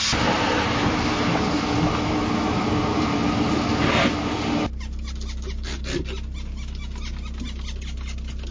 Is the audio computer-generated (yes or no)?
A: no